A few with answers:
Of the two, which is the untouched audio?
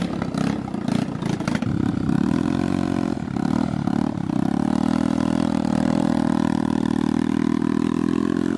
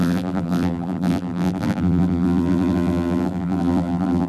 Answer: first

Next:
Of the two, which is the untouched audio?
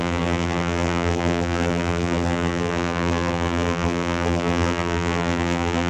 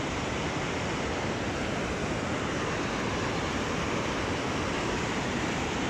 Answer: second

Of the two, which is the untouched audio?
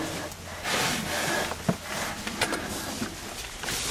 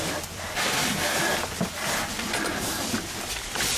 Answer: first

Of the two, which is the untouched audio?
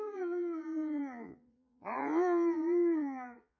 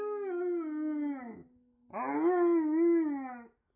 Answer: second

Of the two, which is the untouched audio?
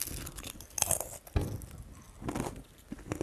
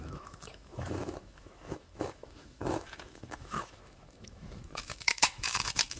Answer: first